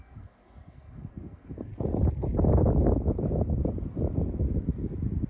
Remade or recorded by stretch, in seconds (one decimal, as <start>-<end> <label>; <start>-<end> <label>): 0.0-1.7 remade; 1.7-5.3 recorded